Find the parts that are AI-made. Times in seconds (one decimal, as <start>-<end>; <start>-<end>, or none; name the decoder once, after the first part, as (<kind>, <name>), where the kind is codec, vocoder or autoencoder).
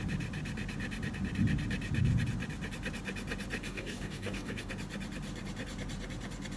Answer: 3.6-4.7 (codec, DAC)